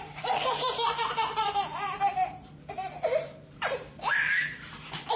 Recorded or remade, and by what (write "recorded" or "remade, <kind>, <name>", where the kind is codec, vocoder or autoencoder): remade, vocoder, BigVGAN v2